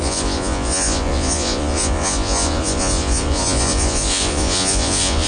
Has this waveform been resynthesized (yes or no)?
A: yes